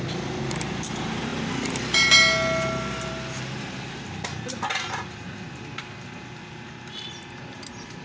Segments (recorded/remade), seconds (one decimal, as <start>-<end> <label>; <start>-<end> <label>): 0.0-8.0 recorded